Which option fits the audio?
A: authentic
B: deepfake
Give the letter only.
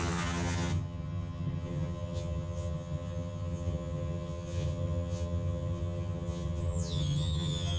B